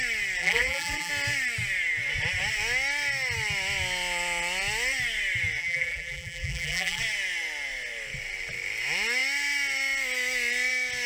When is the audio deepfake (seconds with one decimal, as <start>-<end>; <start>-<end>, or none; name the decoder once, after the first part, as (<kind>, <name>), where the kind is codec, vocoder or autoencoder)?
0.4-1.1 (vocoder, BigVGAN v2); 5.6-7.0